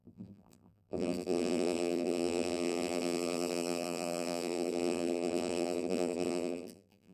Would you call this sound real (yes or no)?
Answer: no